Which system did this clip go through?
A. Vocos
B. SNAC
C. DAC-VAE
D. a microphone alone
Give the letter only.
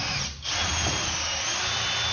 D